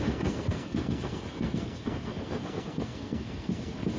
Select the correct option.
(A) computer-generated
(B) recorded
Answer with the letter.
A